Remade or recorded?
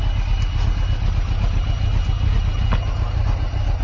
recorded